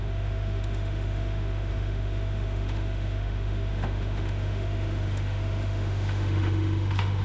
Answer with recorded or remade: remade